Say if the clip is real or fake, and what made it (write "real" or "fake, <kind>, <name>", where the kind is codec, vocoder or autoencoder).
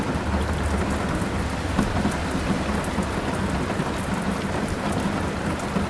real